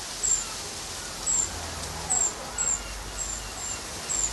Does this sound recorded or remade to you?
recorded